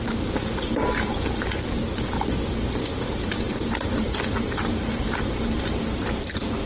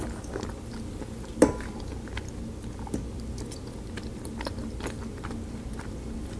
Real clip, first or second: second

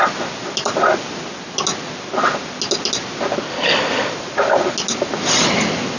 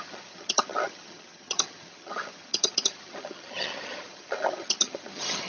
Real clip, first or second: first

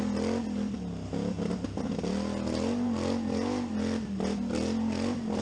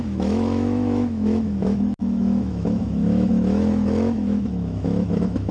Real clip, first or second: first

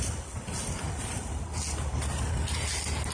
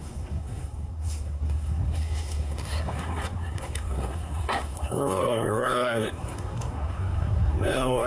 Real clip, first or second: first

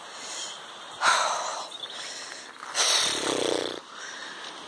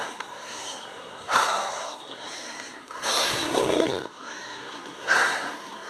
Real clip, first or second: first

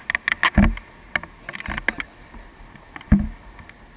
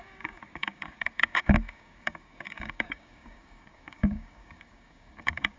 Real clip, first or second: first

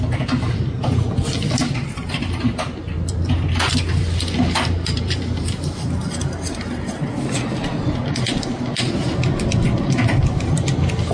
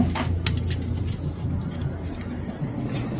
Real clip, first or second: second